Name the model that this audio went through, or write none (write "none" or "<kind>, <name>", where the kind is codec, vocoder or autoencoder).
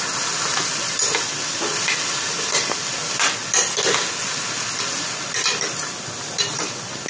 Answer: none